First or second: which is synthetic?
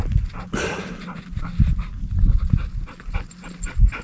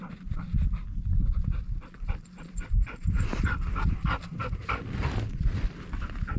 second